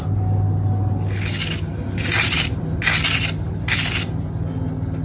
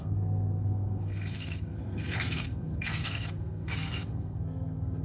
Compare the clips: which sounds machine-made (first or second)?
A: second